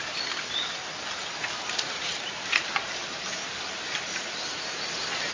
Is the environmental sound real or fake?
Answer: real